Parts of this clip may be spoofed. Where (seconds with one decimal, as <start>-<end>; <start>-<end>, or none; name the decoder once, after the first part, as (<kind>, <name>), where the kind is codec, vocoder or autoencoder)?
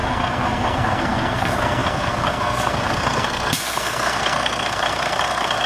0.0-5.7 (codec, SNAC)